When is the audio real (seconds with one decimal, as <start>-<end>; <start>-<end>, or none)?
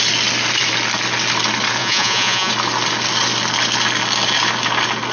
0.0-1.8; 2.5-5.1